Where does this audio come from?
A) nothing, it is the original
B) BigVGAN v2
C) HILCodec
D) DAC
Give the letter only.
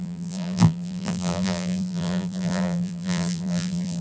B